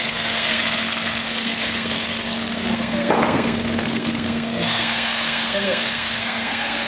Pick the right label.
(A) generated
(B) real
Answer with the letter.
A